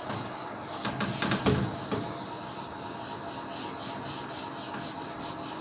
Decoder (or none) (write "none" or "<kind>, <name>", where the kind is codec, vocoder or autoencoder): none